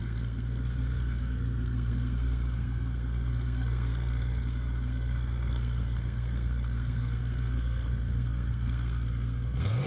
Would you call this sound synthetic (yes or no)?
yes